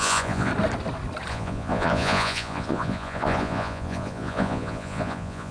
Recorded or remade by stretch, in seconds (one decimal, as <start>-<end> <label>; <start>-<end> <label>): 0.0-0.5 remade; 0.5-1.3 recorded; 1.3-5.5 remade